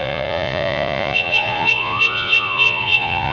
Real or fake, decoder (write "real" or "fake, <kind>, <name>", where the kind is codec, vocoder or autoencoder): fake, vocoder, Vocos